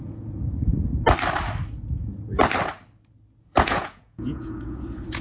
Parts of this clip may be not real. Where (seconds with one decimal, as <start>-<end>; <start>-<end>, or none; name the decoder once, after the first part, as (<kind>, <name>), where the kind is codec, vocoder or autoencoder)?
0.0-0.9 (vocoder, Vocos); 3.4-5.2

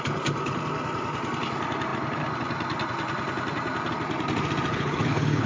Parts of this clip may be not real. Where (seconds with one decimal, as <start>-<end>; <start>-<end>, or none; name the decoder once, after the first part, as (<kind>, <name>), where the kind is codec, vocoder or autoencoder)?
4.7-5.5 (codec, HILCodec)

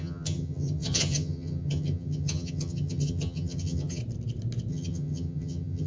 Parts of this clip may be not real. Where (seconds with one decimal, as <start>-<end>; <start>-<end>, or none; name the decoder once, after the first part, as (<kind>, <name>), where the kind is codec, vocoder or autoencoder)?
0.0-4.0 (vocoder, HiFi-GAN); 4.7-5.9

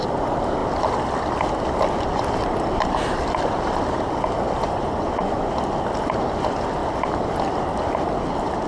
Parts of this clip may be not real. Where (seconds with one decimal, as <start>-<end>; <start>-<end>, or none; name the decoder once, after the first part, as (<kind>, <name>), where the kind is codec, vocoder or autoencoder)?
4.6-5.5 (vocoder, Vocos)

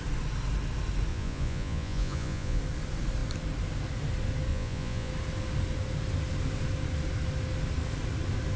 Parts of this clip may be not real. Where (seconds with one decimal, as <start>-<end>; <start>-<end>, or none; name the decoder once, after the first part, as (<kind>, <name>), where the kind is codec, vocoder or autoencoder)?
1.1-2.6 (vocoder, Vocos); 4.5-5.1

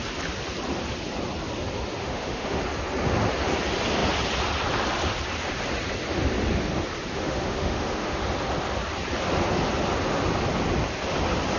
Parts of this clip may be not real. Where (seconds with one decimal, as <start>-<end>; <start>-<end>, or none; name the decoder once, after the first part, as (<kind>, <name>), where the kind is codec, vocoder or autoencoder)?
2.0-2.6 (autoencoder, DAC-VAE); 7.1-8.2

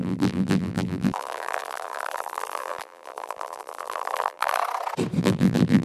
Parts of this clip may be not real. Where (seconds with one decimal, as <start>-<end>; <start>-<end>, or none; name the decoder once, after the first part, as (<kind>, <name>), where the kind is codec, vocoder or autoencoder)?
0.0-4.6 (vocoder, BigVGAN v2); 5.2-5.8

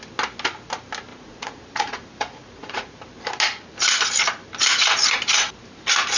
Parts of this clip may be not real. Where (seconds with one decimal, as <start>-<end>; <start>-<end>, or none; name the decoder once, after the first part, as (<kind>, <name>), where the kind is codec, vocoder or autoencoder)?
1.1-3.0 (vocoder, Vocos)